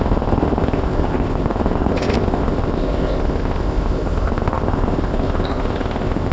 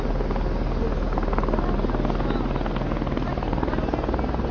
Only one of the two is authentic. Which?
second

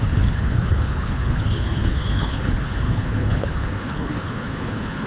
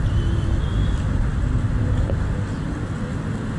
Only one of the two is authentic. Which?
second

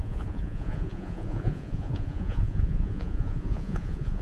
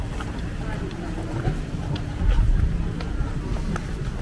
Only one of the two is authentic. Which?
second